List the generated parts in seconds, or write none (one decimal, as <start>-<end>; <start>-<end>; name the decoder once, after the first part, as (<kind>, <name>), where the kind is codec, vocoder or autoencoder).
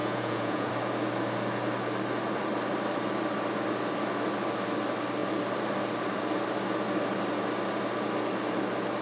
0.0-0.7 (vocoder, Vocos)